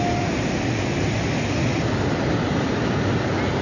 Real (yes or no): yes